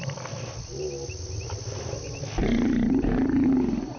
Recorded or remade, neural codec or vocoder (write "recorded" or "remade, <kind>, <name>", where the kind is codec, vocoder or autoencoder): recorded